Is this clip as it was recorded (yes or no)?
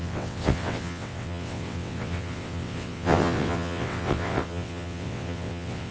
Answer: no